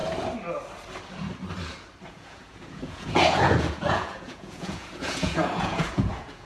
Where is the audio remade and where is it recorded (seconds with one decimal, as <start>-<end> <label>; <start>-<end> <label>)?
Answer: 0.0-2.1 recorded; 2.1-6.5 remade